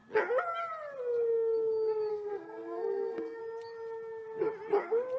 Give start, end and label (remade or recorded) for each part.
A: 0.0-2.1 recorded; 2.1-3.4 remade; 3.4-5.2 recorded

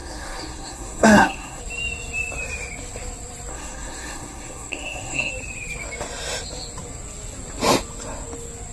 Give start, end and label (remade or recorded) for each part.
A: 0.0-1.6 remade; 1.6-3.5 recorded; 3.5-5.3 remade; 5.3-8.7 recorded

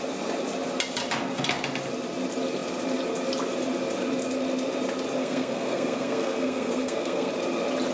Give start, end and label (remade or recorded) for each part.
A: 0.0-5.2 recorded; 5.2-7.3 remade; 7.3-7.9 recorded